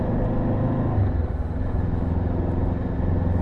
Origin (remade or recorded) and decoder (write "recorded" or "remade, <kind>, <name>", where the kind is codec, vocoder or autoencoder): recorded